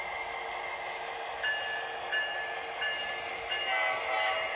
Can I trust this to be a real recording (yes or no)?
yes